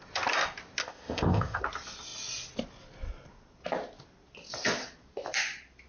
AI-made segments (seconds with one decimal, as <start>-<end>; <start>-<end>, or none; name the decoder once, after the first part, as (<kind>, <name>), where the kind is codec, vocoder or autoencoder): 0.8-1.6 (codec, ZipCodec)